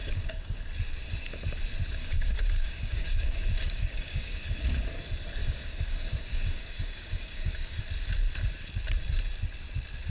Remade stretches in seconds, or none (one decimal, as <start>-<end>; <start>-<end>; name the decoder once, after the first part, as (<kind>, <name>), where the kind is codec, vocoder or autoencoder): 0.0-0.6 (codec, DAC); 2.0-4.8; 5.4-7.8